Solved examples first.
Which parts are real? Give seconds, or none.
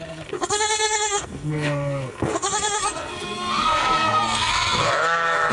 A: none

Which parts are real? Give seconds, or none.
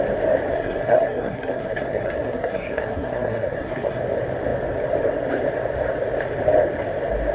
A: 0.0-0.5; 4.0-7.3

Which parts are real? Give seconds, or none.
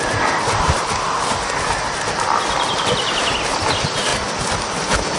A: 0.0-5.2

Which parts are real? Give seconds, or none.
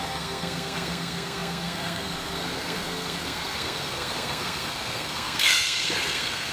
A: none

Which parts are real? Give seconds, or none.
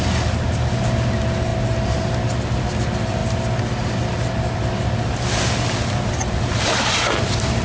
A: 0.0-7.6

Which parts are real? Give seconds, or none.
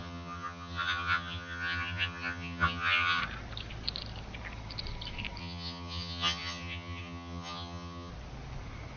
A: 3.2-5.4; 8.1-9.0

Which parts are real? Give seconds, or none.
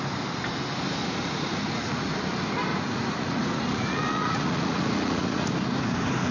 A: 0.0-1.0; 2.1-2.7; 5.5-6.3